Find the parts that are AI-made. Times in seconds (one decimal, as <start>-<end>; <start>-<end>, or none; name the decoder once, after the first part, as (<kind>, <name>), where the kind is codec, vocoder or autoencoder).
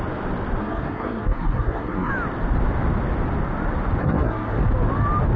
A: 0.6-2.1 (codec, SNAC); 4.0-4.7